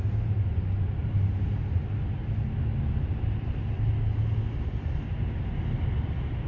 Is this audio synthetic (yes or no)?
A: no